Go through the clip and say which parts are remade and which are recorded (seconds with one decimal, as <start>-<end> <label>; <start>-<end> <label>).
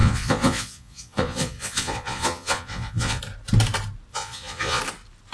0.0-3.2 remade; 3.2-4.1 recorded; 4.1-4.8 remade; 4.8-5.3 recorded